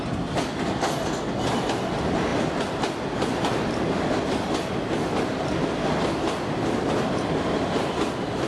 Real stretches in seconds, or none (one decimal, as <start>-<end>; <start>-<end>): 0.0-8.5